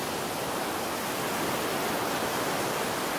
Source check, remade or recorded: recorded